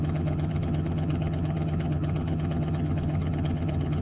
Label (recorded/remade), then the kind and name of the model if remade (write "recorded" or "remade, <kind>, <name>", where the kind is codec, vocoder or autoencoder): remade, vocoder, HiFi-GAN